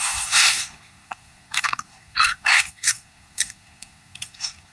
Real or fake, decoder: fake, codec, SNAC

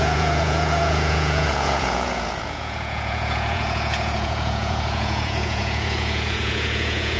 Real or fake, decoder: fake, vocoder, Vocos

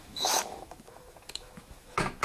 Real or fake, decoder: fake, autoencoder, DAC-VAE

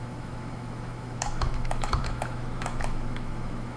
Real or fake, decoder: fake, autoencoder, DAC-VAE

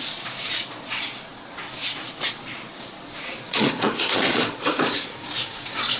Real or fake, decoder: fake, vocoder, Vocos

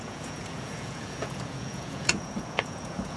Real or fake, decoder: fake, vocoder, Vocos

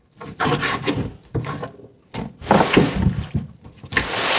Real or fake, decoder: real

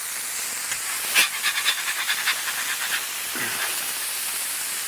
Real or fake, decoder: real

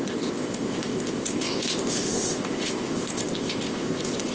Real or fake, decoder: fake, codec, ZipCodec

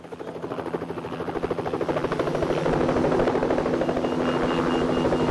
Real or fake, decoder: real